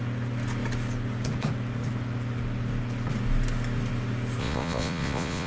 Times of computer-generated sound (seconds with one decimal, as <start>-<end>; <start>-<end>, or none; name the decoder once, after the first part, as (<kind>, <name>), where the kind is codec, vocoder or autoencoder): 4.4-5.5 (vocoder, Vocos)

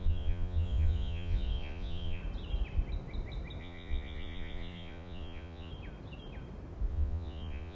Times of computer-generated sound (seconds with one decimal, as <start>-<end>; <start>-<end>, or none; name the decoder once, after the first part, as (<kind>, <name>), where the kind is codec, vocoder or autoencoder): 0.0-2.2 (vocoder, Vocos); 3.6-5.7; 6.9-7.8

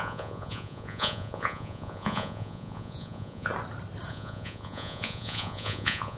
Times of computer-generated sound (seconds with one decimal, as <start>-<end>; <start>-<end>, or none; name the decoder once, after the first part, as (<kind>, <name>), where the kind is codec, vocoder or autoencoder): 0.0-3.5 (vocoder, Vocos); 4.1-6.2

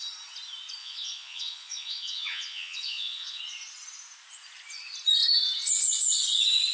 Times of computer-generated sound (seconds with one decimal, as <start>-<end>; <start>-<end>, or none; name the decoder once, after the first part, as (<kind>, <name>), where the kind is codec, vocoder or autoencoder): 0.8-3.4 (vocoder, Vocos)

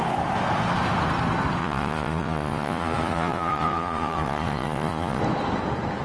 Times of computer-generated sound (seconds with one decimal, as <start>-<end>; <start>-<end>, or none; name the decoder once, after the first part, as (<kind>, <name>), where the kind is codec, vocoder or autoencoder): 1.6-5.2 (vocoder, Vocos)

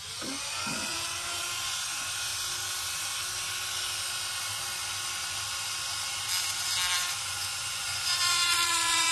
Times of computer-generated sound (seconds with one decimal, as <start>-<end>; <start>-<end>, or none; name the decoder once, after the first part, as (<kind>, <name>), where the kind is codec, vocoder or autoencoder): 0.0-2.3 (vocoder, Vocos); 7.2-9.1